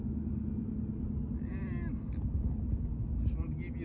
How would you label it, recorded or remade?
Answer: recorded